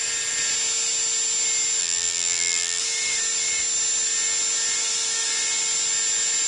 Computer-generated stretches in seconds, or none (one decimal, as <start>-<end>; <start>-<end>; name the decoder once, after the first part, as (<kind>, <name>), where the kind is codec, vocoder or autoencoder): 1.8-2.8 (vocoder, BigVGAN v2)